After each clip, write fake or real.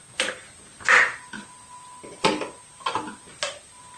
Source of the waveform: real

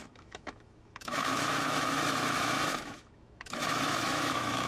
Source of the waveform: fake